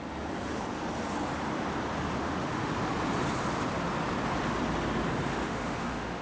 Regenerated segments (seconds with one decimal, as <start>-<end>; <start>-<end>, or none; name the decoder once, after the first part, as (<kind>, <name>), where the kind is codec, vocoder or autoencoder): 2.2-2.7 (autoencoder, DAC-VAE); 5.3-6.2

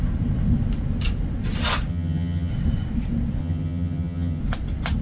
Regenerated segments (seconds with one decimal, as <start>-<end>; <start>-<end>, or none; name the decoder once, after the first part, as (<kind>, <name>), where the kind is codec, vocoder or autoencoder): 1.9-2.5 (vocoder, HiFi-GAN); 3.4-4.4